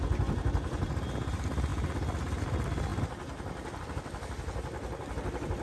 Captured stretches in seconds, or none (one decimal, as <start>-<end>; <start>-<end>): 0.0-5.6